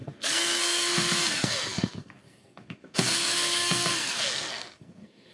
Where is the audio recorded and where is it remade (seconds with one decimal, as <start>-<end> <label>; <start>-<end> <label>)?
0.0-5.3 remade